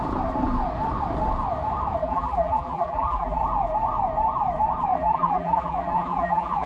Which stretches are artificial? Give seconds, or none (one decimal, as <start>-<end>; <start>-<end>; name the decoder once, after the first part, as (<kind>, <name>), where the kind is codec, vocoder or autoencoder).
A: 2.0-3.4 (vocoder, BigVGAN v2); 4.9-6.7